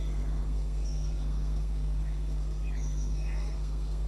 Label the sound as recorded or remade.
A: remade